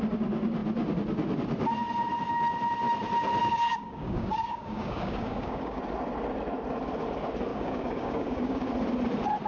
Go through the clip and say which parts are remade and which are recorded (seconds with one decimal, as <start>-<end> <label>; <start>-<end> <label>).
0.0-3.4 recorded; 3.4-5.8 remade; 5.8-7.5 recorded; 7.5-8.7 remade; 8.7-9.5 recorded